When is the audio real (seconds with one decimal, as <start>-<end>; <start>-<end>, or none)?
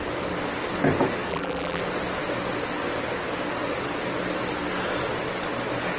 0.0-1.3; 1.8-6.0